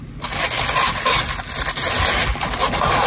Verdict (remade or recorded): recorded